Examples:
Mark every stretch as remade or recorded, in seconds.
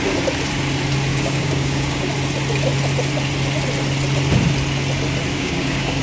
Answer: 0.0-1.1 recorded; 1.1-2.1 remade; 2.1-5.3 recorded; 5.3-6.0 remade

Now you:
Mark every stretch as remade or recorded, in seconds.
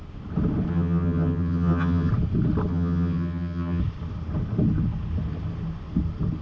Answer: 0.0-0.7 recorded; 0.7-2.1 remade; 2.1-2.7 recorded; 2.7-3.8 remade; 3.8-6.4 recorded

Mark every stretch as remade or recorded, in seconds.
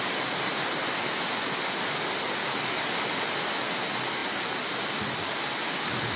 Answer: 0.0-6.2 recorded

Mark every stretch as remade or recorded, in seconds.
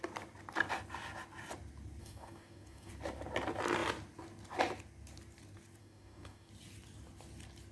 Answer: 0.0-2.0 recorded; 2.0-2.9 remade; 2.9-5.8 recorded; 5.8-6.5 remade; 6.5-7.7 recorded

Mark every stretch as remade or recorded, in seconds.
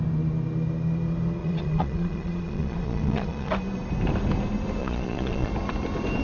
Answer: 0.0-1.4 recorded; 1.4-3.5 remade; 3.5-4.8 recorded; 4.8-5.5 remade; 5.5-6.2 recorded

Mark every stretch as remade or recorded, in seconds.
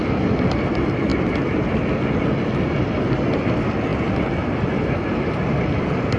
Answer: 0.0-1.1 remade; 1.1-2.2 recorded; 2.2-6.2 remade